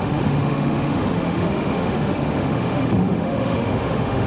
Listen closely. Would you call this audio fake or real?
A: fake